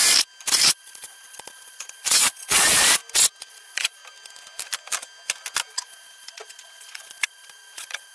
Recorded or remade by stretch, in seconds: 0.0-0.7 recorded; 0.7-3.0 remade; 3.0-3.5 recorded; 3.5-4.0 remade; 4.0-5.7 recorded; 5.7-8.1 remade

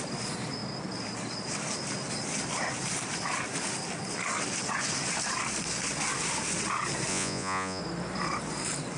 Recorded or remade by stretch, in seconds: 0.0-7.1 recorded; 7.1-7.8 remade; 7.8-9.0 recorded

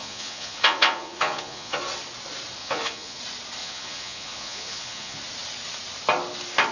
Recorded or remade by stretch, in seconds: 0.0-1.8 remade; 1.8-2.6 recorded; 2.6-3.2 remade; 3.2-3.6 recorded; 3.6-5.2 remade; 5.2-6.7 recorded

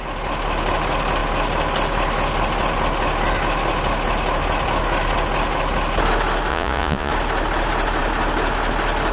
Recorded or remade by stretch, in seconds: 0.0-6.5 recorded; 6.5-7.1 remade; 7.1-9.1 recorded

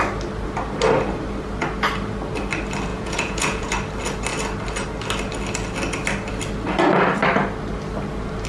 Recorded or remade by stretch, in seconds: 0.0-2.9 recorded; 2.9-3.7 remade; 3.7-8.5 recorded

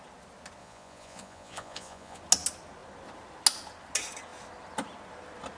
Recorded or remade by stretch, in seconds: 0.0-0.6 recorded; 0.6-2.2 remade; 2.2-5.6 recorded

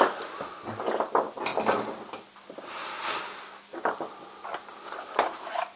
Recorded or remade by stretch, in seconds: 0.0-5.8 recorded

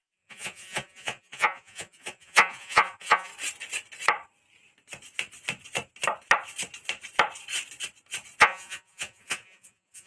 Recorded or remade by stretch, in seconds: 0.0-3.3 remade; 3.3-8.4 recorded; 8.4-10.1 remade